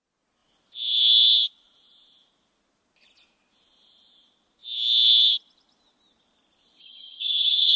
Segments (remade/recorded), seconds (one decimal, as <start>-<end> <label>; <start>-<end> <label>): 0.0-6.8 recorded; 6.8-7.8 remade